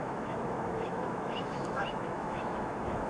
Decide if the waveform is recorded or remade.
remade